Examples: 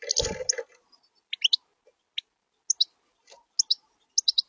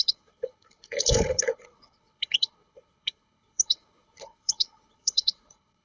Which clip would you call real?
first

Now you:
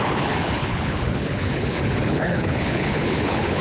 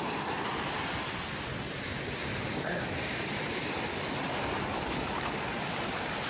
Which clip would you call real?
second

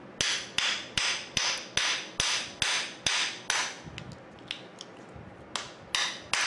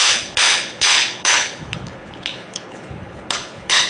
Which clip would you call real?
first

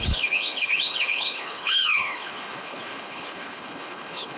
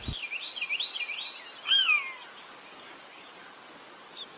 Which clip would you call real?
second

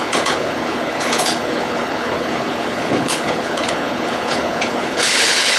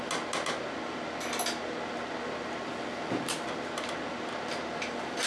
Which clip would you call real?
second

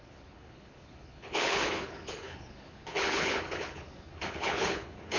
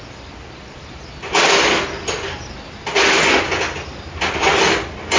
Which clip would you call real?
second